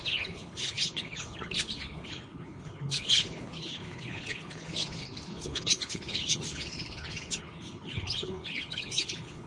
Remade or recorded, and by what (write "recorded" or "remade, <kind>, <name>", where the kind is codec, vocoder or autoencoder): remade, codec, HILCodec